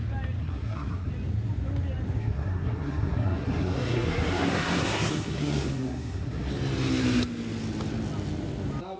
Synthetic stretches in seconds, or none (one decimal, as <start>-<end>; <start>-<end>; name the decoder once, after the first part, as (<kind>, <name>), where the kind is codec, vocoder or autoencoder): 0.4-1.1 (codec, SNAC); 2.2-6.5